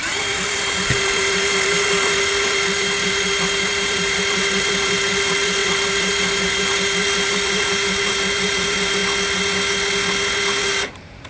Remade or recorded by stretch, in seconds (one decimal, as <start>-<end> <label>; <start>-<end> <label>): 0.0-9.0 remade; 9.0-10.6 recorded; 10.6-11.3 remade